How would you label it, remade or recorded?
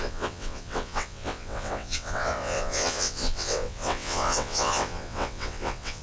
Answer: remade